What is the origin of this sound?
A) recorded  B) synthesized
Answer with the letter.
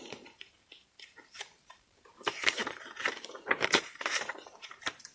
B